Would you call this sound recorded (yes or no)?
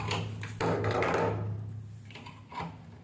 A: yes